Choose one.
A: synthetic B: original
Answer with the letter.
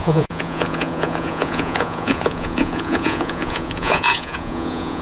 A